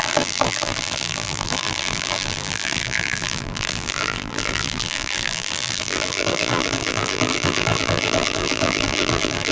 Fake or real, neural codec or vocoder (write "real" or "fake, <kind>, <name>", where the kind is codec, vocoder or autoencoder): fake, vocoder, BigVGAN v2